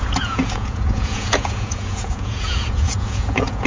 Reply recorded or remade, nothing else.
remade